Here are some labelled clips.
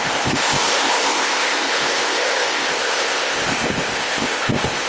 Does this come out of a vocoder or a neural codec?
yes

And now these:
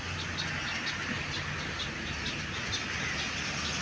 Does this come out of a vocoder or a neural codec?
no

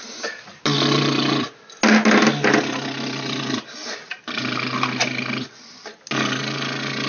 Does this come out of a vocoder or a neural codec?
no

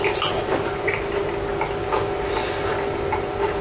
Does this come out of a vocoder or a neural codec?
no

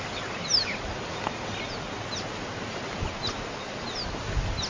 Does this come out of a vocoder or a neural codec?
no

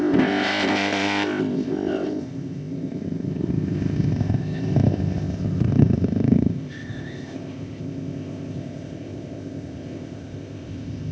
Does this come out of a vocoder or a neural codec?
yes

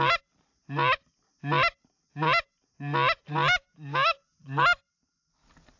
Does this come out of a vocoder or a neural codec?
no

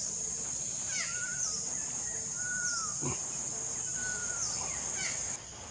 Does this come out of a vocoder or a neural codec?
no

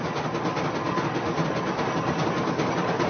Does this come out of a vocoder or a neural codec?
no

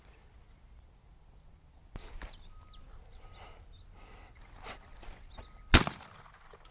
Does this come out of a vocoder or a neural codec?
no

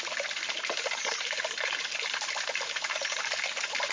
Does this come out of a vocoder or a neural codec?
no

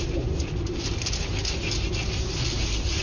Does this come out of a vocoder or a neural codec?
no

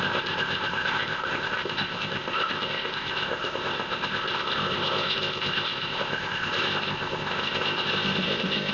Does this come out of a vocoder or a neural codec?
yes